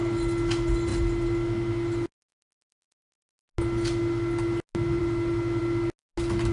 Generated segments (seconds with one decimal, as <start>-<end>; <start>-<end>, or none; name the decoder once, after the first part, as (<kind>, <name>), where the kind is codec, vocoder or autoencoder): none